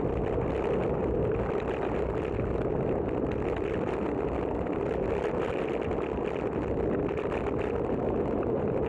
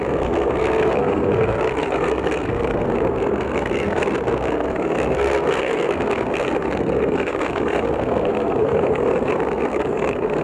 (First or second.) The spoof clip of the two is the second